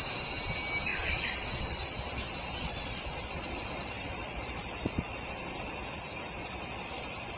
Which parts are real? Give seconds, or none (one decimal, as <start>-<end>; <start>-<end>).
0.0-0.9; 5.3-6.4